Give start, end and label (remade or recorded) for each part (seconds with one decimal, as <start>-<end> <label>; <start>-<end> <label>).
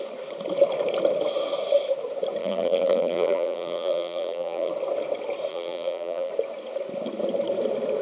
0.0-2.4 recorded; 2.4-4.7 remade; 4.7-5.5 recorded; 5.5-6.3 remade; 6.3-8.0 recorded